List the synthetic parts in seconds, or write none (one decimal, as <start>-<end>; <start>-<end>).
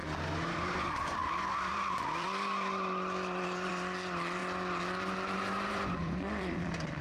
0.5-4.4; 5.7-7.0